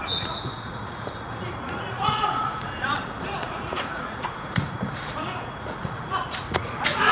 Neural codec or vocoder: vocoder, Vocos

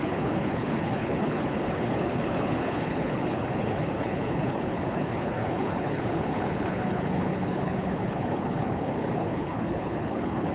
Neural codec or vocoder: codec, HILCodec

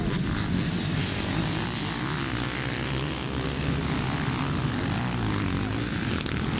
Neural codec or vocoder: none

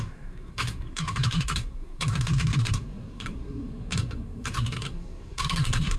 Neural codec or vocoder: codec, SNAC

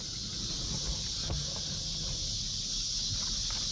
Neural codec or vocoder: none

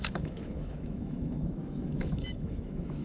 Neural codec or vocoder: autoencoder, DAC-VAE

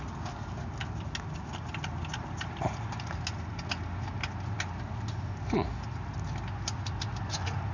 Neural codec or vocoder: none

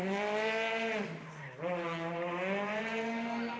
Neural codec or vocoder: none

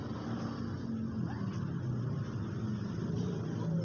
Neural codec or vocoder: none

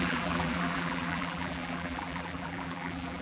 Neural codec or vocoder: vocoder, BigVGAN v2